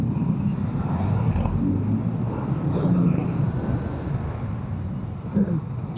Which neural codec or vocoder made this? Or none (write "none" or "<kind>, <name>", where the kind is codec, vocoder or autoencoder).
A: none